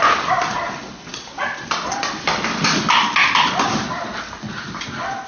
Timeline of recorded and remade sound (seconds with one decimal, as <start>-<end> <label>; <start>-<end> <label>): 0.0-5.3 recorded